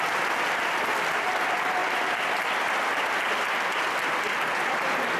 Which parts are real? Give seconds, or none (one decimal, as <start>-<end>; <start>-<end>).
0.0-5.2